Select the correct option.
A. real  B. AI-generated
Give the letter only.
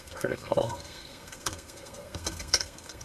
B